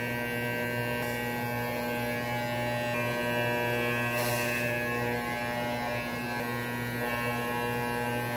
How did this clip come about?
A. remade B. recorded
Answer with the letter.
B